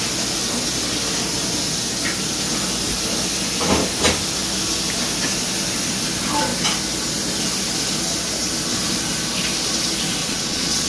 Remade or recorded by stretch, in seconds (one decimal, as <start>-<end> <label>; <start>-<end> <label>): 0.0-10.2 recorded; 10.2-10.9 remade